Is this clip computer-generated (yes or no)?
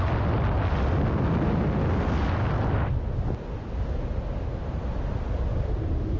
no